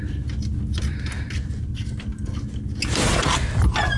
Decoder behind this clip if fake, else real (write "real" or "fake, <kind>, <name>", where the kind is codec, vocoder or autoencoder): real